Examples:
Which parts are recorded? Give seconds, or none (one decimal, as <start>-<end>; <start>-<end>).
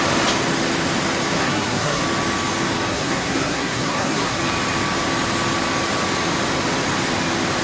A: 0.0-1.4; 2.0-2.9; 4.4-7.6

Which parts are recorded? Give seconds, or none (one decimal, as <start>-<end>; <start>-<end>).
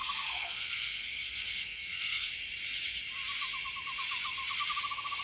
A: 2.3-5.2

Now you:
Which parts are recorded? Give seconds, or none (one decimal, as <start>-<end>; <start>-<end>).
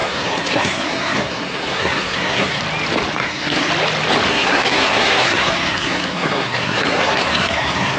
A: 2.6-3.2; 3.7-4.3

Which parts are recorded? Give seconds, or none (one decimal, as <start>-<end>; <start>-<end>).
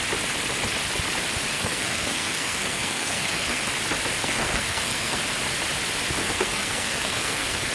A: 0.0-1.5; 3.7-4.2; 5.2-6.2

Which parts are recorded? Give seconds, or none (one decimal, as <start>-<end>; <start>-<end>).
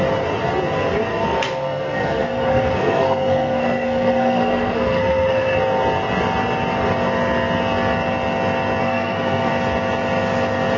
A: 0.0-1.1; 5.6-8.8; 9.5-10.8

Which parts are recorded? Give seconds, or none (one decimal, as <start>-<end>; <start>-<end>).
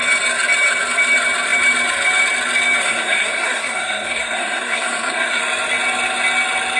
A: 0.0-2.8; 5.4-6.8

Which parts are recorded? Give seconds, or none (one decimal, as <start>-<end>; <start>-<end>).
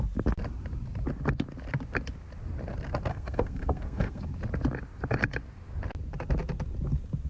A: 0.0-3.1; 4.2-7.3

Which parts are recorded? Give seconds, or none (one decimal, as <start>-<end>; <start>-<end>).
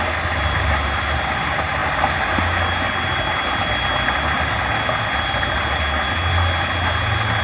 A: 0.0-7.4